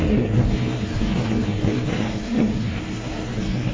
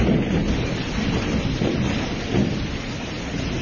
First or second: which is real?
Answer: second